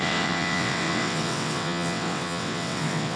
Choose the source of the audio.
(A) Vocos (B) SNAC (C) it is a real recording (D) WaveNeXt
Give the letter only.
D